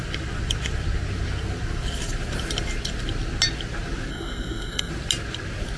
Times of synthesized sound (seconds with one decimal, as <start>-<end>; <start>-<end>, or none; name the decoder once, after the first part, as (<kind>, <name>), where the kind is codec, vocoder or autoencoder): 4.1-4.9 (codec, SNAC)

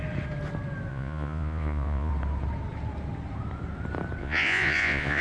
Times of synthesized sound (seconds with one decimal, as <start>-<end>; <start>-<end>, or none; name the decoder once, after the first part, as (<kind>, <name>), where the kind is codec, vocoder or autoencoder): 0.9-2.1 (vocoder, Vocos); 4.2-5.2